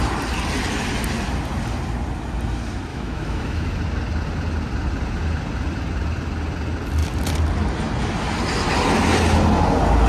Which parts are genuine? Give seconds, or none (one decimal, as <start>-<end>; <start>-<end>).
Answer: 0.0-2.9; 3.8-10.1

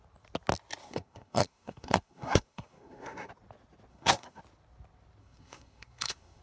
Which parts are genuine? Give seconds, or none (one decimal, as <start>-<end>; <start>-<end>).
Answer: 0.0-0.8; 3.3-3.9; 4.4-5.2

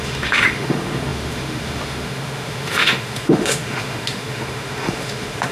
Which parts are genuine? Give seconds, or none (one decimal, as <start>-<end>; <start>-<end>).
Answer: none

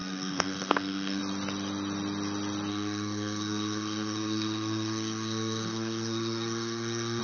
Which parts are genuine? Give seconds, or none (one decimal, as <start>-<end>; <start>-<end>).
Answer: 1.2-2.7

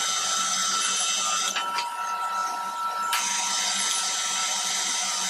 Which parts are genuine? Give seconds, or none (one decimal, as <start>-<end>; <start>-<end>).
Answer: 0.0-0.6; 1.1-4.4

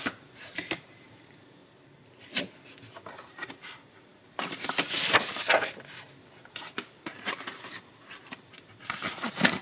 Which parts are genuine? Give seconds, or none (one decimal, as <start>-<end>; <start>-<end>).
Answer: 1.6-3.1